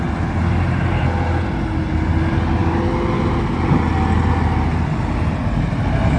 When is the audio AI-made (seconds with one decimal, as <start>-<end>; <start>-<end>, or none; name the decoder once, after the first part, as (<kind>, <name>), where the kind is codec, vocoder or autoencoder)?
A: none